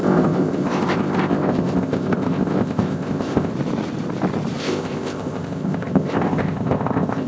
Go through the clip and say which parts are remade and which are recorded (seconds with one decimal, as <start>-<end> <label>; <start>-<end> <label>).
0.0-3.5 remade; 3.5-4.6 recorded; 4.6-7.3 remade